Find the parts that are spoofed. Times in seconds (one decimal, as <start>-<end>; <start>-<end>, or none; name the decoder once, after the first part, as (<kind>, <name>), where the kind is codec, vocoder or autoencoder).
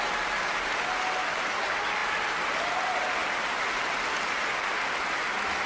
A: none